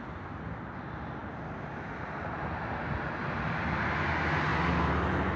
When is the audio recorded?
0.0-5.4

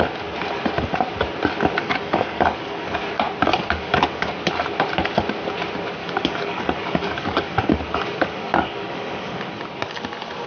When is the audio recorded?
0.0-1.8; 3.1-3.5; 4.3-6.0; 9.6-10.5

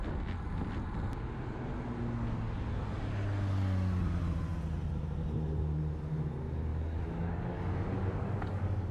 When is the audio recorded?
0.0-6.7

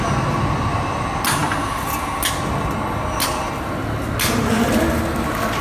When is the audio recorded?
0.0-5.6

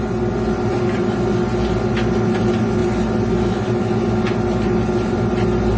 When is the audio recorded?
0.0-5.8